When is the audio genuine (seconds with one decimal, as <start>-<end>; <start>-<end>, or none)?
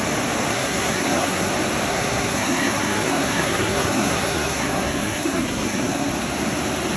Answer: 0.0-0.5; 1.5-1.9; 6.1-7.0